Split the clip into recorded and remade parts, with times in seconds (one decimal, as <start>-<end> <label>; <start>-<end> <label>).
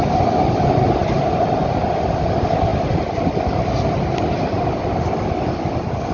0.0-6.1 recorded